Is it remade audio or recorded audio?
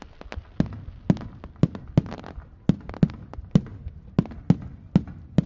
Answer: recorded